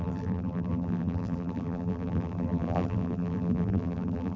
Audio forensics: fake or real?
fake